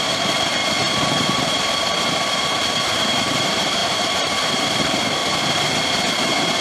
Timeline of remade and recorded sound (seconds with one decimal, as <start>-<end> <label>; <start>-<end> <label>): 0.0-5.2 remade; 5.2-6.6 recorded